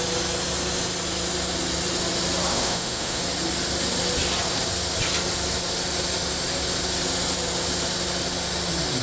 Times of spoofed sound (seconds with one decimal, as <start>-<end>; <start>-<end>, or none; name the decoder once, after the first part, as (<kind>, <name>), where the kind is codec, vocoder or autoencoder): 2.5-3.2 (autoencoder, DAC-VAE)